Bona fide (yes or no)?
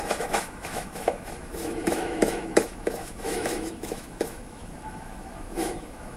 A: no